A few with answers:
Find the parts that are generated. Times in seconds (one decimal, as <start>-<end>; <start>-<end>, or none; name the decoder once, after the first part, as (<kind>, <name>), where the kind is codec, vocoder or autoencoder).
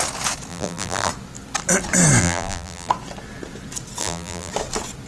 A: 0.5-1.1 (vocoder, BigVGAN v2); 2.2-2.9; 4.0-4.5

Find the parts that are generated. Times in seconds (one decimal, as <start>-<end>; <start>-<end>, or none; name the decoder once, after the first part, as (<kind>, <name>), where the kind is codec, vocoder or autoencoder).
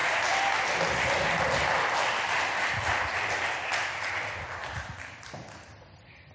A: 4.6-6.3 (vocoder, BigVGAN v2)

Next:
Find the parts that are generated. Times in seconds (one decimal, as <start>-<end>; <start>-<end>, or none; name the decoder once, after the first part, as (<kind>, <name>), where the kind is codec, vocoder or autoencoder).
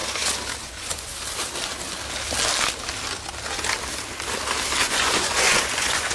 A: 0.6-1.1 (vocoder, Vocos); 4.8-6.1